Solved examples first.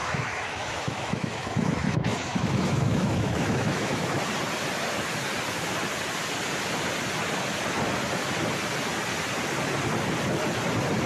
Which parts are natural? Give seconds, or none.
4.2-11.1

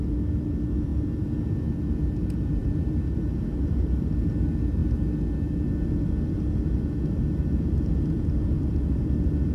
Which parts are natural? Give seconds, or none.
0.0-2.6; 4.1-9.5

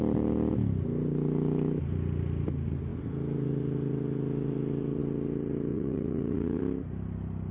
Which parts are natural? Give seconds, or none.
0.0-5.7; 6.6-7.5

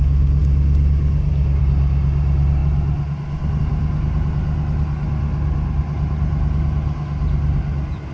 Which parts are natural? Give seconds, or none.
0.0-8.1

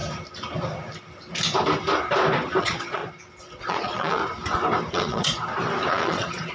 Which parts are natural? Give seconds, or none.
0.0-2.6; 3.0-3.6; 4.2-4.9; 5.4-5.9

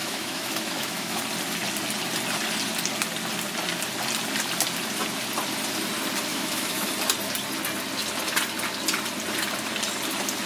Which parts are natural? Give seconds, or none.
1.2-6.3; 6.9-10.5

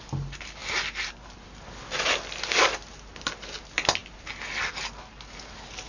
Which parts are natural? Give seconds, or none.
0.0-5.9